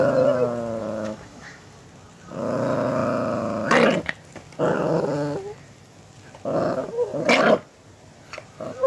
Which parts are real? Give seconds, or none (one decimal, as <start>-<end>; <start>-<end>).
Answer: 0.0-0.8; 1.7-8.9